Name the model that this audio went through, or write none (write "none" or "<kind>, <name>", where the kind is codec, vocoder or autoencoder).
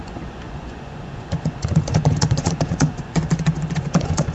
vocoder, Vocos